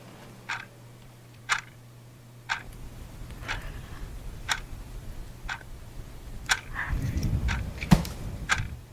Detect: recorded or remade remade